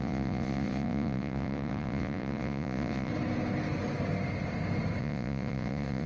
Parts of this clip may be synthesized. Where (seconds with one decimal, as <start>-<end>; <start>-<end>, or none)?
0.0-3.1; 5.0-6.1

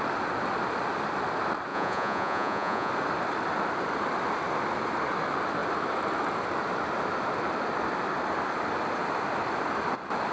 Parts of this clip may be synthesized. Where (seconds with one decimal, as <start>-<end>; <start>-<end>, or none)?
1.7-2.9

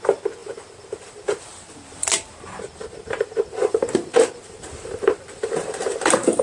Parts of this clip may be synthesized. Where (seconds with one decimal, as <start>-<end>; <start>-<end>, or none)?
0.4-1.7; 2.6-6.4

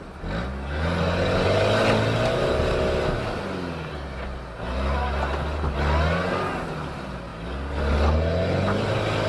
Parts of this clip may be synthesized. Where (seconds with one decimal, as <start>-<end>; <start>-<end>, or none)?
none

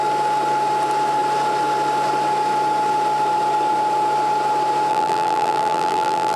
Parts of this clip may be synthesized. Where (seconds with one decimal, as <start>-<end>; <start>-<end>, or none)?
4.9-6.4

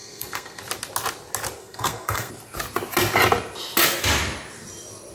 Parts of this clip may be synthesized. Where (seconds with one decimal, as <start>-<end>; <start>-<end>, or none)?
0.0-0.6; 1.6-2.3

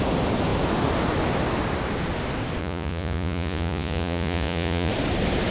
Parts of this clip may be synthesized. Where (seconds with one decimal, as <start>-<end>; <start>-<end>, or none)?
2.6-4.9